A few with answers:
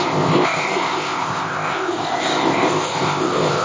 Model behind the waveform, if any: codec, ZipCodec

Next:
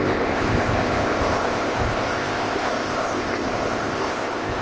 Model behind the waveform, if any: codec, ZipCodec